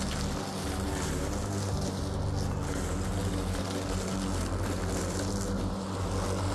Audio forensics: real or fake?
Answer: real